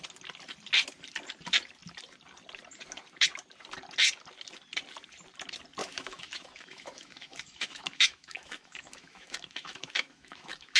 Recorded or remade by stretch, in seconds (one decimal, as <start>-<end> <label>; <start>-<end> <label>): 0.0-5.8 recorded; 5.8-10.8 remade